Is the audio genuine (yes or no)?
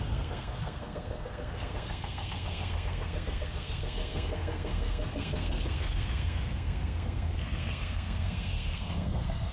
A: no